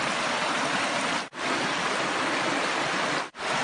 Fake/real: real